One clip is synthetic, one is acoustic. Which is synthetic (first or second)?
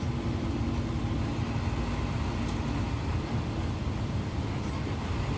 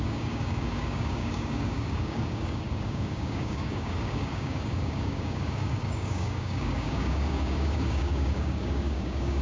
second